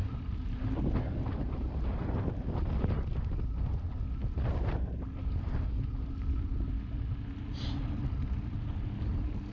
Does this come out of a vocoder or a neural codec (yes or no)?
no